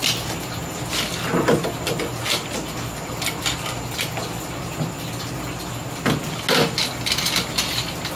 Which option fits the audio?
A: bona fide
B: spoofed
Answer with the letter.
A